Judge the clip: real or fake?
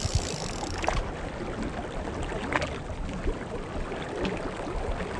real